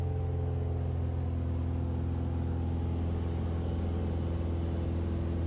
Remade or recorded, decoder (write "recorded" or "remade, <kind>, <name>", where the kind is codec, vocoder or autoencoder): recorded